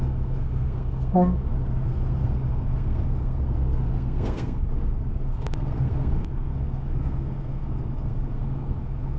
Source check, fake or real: fake